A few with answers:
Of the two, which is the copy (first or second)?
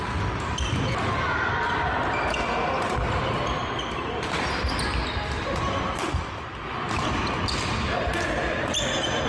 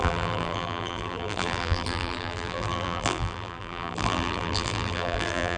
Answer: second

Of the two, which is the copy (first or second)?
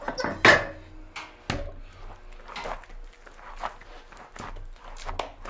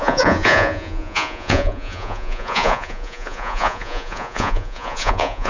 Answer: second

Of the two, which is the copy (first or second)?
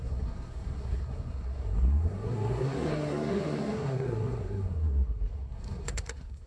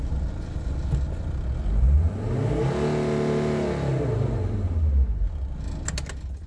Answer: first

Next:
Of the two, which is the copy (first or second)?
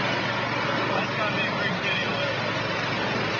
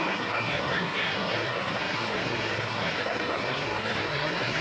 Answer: second